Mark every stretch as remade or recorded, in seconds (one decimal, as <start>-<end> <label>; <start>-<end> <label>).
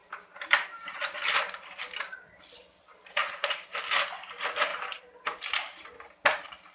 0.0-1.8 remade; 1.8-3.2 recorded; 3.2-3.7 remade; 3.7-4.7 recorded; 4.7-6.1 remade; 6.1-6.7 recorded